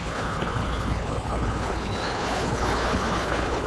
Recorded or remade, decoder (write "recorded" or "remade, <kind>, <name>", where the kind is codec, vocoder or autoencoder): remade, codec, HILCodec